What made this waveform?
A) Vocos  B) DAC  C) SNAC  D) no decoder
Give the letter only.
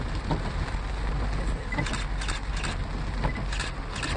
D